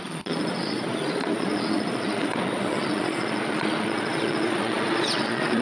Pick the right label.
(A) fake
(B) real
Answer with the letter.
A